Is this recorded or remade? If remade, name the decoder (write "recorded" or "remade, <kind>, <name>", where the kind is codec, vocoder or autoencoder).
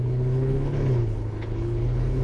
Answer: remade, codec, HILCodec